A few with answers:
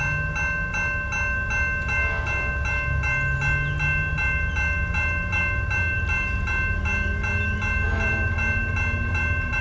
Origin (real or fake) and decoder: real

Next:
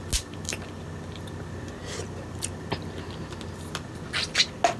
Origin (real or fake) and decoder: real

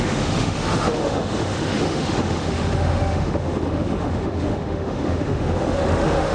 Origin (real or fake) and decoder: fake, autoencoder, DAC-VAE